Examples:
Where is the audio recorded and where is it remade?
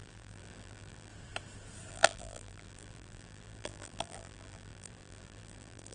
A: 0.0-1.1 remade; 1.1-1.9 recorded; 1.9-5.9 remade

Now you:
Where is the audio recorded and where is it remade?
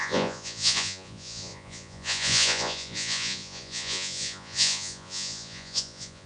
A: 0.0-6.3 remade